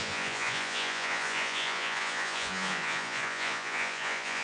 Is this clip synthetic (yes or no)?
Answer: yes